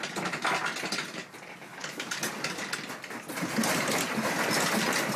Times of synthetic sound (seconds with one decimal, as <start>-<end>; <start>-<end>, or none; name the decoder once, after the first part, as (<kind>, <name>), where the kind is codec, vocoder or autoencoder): 1.7-2.3 (codec, DAC)